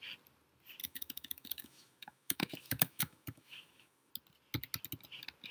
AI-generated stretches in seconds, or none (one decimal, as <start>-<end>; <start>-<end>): 0.8-4.1